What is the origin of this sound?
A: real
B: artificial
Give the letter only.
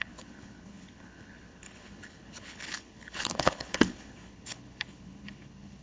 B